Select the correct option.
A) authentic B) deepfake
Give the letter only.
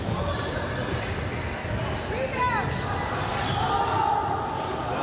A